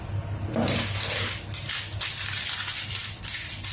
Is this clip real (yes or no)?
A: yes